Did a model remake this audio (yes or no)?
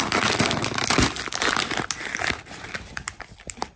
no